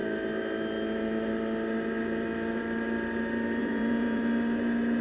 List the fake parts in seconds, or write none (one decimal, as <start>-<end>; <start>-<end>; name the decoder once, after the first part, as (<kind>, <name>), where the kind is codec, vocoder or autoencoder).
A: 3.6-4.2 (vocoder, Vocos)